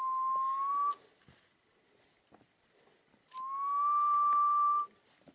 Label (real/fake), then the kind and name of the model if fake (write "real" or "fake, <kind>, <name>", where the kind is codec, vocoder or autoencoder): real